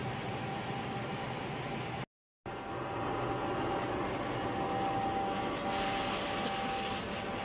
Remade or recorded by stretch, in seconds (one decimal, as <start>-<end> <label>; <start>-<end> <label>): 0.0-7.4 recorded